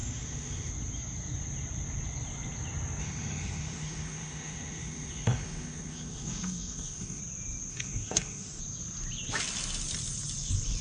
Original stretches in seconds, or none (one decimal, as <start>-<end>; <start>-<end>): 0.7-3.0; 7.2-7.7; 8.6-10.8

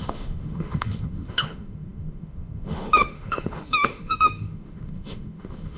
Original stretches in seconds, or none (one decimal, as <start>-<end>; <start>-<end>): none

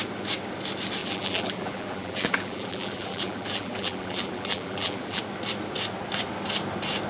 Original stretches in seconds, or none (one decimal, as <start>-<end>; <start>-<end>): 0.0-1.0; 5.2-7.1

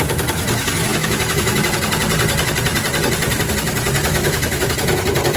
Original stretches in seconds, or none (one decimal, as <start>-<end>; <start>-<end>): 0.0-0.9; 1.6-4.1; 4.7-5.4

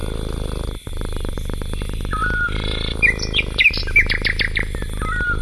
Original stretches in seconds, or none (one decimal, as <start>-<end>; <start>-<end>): 0.0-2.2; 3.8-5.4